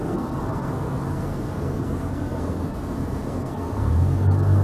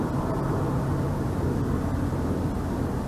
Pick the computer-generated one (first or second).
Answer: first